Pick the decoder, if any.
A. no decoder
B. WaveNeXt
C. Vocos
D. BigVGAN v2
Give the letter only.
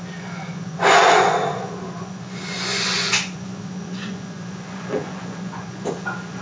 C